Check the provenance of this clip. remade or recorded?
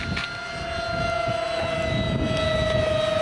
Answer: recorded